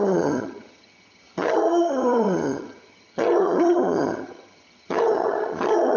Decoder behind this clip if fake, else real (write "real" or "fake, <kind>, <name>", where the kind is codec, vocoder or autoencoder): fake, vocoder, HiFi-GAN